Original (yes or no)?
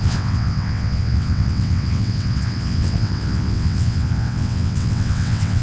no